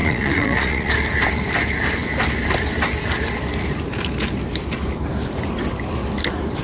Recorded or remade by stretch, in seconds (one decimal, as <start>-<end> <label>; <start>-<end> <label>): 0.0-0.9 remade; 0.9-6.6 recorded